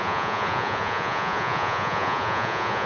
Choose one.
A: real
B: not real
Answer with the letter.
B